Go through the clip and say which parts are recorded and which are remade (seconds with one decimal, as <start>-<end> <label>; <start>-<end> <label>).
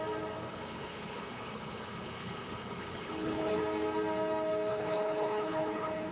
0.0-0.5 recorded; 0.5-3.6 remade; 3.6-4.7 recorded; 4.7-6.1 remade